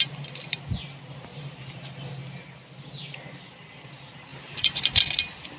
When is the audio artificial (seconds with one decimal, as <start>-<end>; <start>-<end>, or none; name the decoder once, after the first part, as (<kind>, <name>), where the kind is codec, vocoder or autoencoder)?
1.3-2.1 (vocoder, BigVGAN v2); 4.3-5.0

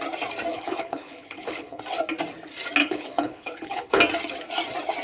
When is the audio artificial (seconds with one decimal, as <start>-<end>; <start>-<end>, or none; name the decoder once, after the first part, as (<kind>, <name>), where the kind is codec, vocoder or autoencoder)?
0.5-1.8 (codec, HILCodec); 2.8-4.0

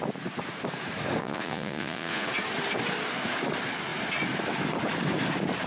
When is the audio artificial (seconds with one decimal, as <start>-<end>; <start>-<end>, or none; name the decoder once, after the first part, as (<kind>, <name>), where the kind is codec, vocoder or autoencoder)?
1.2-2.3 (vocoder, Vocos)

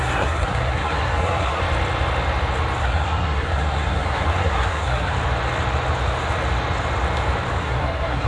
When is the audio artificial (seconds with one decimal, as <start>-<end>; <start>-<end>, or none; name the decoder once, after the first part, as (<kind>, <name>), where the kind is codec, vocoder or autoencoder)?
0.0-1.6 (codec, SNAC); 2.8-5.1; 7.6-8.3

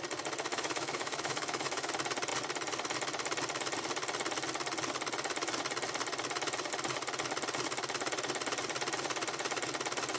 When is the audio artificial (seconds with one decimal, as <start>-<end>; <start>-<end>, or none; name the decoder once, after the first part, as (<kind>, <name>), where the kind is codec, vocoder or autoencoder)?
0.5-1.9 (autoencoder, DAC-VAE)